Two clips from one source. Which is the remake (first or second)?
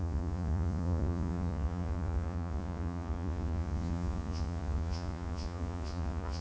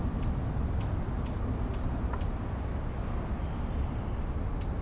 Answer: first